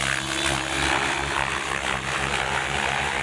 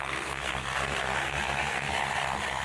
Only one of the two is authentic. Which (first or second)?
first